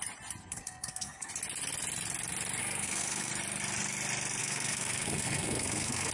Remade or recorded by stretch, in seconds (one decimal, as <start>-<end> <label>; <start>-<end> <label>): 0.0-0.4 recorded; 0.4-1.3 remade; 1.3-2.6 recorded; 2.6-3.3 remade; 3.3-4.4 recorded; 4.4-6.1 remade